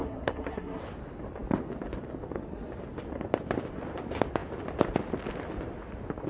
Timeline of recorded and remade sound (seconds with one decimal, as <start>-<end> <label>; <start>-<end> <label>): 0.0-0.8 remade; 0.8-6.3 recorded